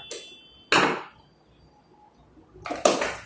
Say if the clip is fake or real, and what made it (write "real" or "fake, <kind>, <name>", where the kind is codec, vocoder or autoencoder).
real